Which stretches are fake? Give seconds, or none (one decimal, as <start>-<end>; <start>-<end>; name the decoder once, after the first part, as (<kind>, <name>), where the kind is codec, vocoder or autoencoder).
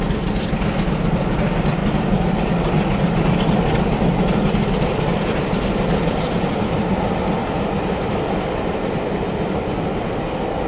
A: none